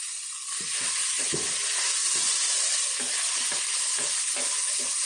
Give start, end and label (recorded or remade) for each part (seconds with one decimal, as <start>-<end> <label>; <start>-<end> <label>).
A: 0.0-5.1 recorded